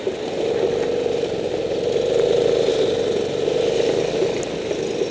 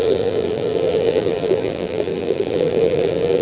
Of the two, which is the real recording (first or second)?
first